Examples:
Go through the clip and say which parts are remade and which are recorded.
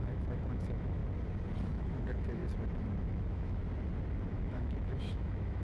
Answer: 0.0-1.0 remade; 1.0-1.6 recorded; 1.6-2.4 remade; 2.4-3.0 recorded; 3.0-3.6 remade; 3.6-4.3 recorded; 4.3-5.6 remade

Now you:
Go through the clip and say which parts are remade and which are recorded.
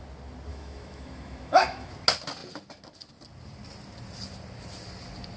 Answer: 0.0-0.5 recorded; 0.5-1.9 remade; 1.9-5.4 recorded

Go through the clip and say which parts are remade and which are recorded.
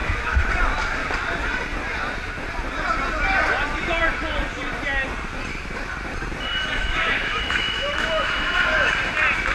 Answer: 0.0-0.5 remade; 0.5-6.8 recorded; 6.8-8.9 remade; 8.9-9.5 recorded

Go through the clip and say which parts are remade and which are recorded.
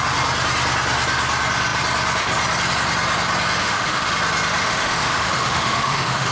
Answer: 0.0-3.6 recorded; 3.6-4.1 remade; 4.1-4.6 recorded; 4.6-6.3 remade